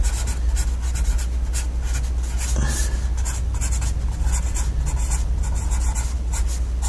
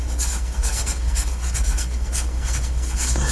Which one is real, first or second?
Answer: first